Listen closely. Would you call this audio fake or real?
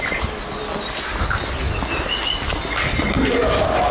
real